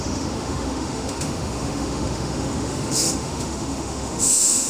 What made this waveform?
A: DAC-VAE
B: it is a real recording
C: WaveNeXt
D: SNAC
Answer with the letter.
A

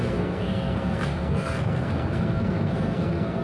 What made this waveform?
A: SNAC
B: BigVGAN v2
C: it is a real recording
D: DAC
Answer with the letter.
A